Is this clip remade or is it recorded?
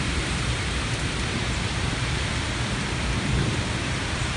remade